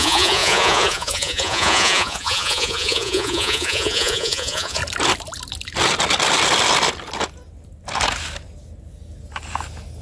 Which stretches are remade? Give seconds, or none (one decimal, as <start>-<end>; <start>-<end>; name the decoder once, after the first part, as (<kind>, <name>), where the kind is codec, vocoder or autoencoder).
0.0-4.8 (vocoder, Vocos)